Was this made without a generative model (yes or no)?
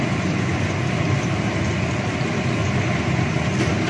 yes